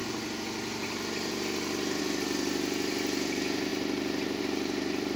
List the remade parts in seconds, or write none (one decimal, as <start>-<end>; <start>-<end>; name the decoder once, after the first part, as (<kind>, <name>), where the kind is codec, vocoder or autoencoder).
2.0-5.2 (vocoder, BigVGAN v2)